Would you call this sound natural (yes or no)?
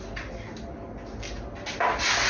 yes